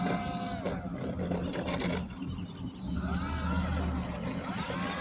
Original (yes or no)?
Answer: yes